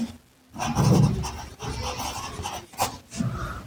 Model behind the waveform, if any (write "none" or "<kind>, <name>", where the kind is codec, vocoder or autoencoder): none